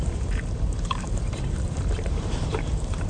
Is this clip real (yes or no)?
no